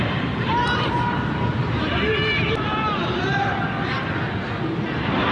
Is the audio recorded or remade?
recorded